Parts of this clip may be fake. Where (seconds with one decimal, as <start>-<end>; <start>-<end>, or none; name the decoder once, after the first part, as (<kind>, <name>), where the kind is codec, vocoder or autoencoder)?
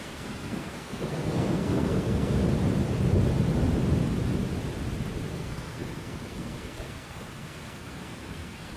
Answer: 0.0-2.4 (codec, SNAC); 5.3-8.8